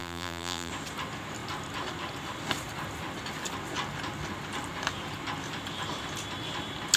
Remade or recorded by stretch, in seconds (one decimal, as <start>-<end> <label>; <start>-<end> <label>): 0.0-0.7 remade; 0.7-7.0 recorded